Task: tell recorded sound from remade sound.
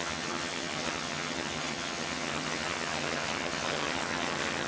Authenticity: remade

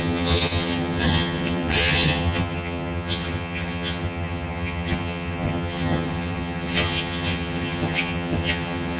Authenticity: remade